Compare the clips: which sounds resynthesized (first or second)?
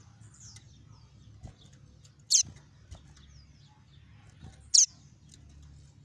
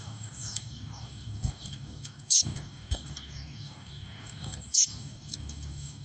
second